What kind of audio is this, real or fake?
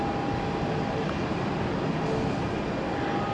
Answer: real